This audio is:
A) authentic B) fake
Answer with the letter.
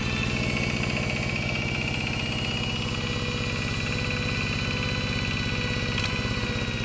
A